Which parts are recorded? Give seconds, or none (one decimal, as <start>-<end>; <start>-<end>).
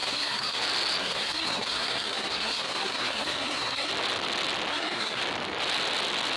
0.6-1.0; 3.9-4.7; 5.2-6.4